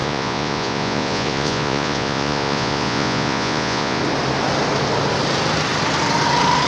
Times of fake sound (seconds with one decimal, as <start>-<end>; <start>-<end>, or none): 0.0-4.0